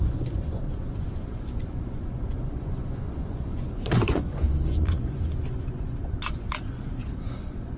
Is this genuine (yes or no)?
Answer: no